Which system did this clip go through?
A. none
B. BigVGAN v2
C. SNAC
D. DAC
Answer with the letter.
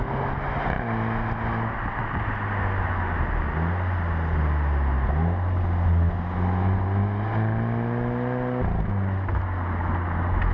A